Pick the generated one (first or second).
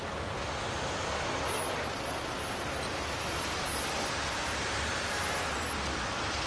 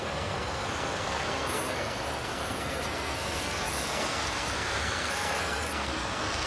second